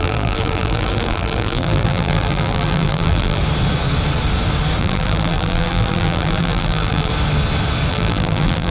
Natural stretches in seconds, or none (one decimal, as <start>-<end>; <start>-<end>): 3.4-4.8; 7.1-7.9